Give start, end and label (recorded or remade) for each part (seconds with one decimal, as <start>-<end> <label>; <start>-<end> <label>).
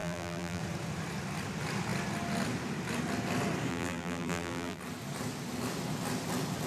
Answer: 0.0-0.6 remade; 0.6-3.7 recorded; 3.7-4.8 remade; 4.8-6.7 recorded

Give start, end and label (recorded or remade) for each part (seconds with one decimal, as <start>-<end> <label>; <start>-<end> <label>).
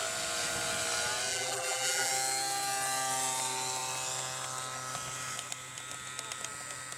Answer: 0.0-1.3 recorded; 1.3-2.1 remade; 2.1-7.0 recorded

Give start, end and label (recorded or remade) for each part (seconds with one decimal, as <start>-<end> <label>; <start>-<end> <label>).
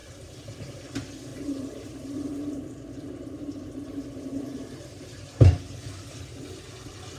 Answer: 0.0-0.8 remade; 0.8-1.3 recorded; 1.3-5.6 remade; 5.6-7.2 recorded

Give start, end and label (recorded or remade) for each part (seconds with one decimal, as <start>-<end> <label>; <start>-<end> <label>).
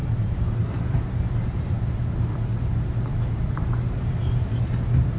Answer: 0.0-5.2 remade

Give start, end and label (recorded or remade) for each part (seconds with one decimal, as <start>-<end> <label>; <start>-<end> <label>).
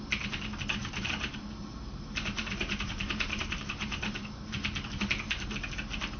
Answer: 0.0-0.8 recorded; 0.8-4.5 remade; 4.5-6.2 recorded